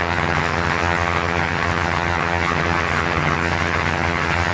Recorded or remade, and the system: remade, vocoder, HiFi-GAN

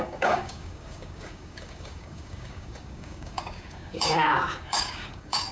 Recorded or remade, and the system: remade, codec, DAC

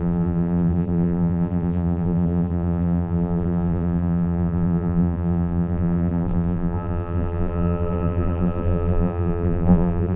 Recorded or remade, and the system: remade, vocoder, BigVGAN v2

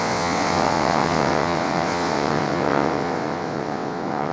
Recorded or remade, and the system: remade, vocoder, WaveNeXt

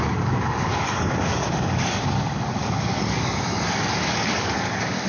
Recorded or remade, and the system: remade, codec, DAC